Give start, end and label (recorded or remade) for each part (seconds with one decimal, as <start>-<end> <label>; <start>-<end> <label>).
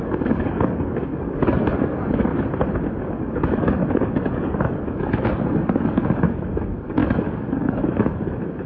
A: 0.0-2.3 remade; 2.3-3.0 recorded; 3.0-8.7 remade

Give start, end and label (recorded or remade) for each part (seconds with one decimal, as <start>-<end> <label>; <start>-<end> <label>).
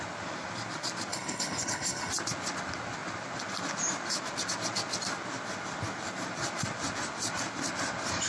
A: 0.0-1.1 recorded; 1.1-2.1 remade; 2.1-8.3 recorded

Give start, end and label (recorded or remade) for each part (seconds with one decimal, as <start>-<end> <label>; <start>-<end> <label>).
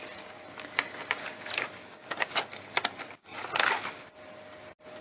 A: 0.0-1.8 recorded; 1.8-2.4 remade; 2.4-5.0 recorded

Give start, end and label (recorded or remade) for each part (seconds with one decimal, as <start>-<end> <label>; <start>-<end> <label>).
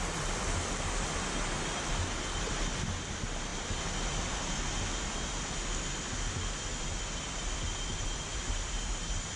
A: 0.0-9.4 recorded